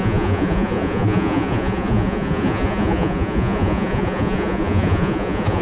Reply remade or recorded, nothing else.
remade